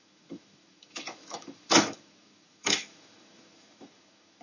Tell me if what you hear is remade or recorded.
remade